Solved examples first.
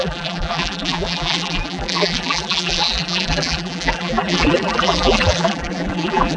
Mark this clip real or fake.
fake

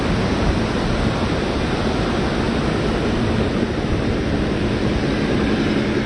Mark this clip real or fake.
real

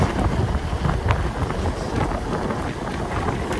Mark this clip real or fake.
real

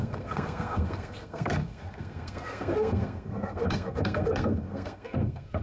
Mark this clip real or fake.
fake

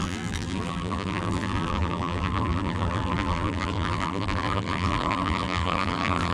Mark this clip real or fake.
fake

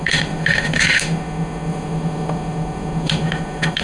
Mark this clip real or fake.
fake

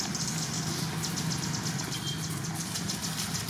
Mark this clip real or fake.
real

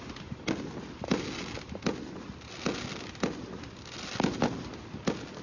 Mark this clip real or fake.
real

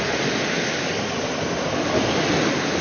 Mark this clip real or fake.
real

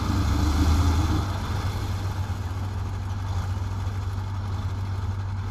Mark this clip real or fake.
real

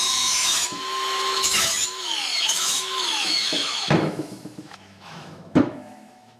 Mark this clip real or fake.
fake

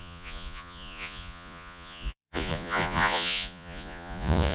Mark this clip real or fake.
fake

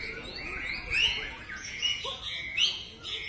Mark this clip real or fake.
fake